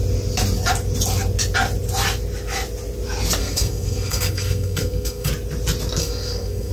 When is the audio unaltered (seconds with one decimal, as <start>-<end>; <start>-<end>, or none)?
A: 0.0-3.4; 5.3-6.0